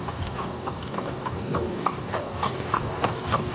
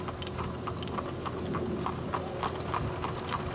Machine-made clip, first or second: first